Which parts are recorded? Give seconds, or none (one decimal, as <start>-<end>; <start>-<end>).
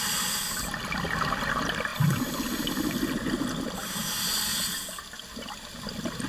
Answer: 0.0-6.3